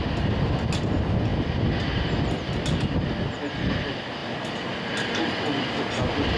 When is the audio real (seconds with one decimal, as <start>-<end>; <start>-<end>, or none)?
0.0-1.3; 2.3-6.4